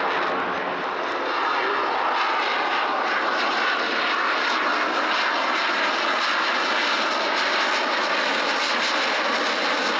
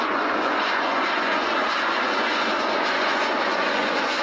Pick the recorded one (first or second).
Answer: first